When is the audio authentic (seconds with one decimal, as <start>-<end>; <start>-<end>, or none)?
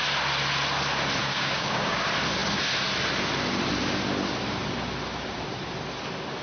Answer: 0.0-1.2; 2.0-6.4